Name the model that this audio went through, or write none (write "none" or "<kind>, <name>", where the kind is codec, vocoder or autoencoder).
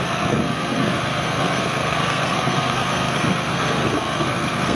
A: codec, SNAC